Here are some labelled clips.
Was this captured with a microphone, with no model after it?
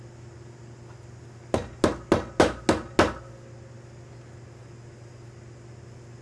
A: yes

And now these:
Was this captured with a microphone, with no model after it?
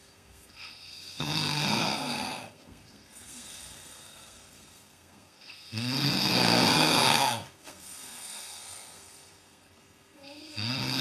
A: no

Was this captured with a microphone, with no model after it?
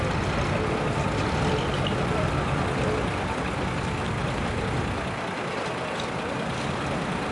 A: yes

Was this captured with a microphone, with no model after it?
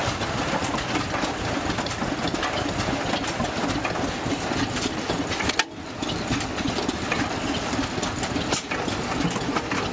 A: yes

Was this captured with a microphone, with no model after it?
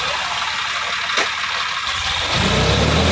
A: yes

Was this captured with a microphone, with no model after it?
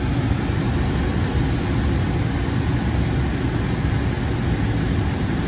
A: yes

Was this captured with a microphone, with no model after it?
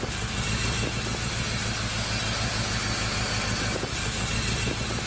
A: yes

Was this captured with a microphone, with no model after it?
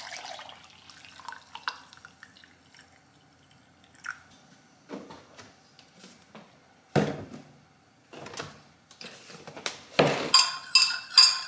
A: yes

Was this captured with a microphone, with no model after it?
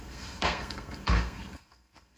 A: no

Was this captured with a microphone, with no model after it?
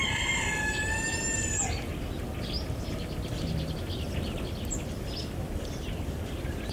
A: yes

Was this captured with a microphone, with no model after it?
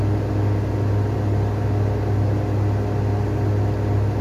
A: yes